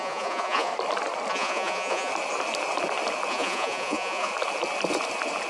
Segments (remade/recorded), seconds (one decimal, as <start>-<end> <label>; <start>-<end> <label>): 0.0-0.7 remade; 0.7-1.3 recorded; 1.3-2.1 remade; 2.1-3.3 recorded; 3.3-4.3 remade; 4.3-5.5 recorded